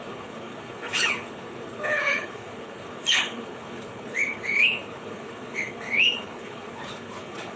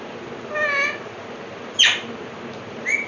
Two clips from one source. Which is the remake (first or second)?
first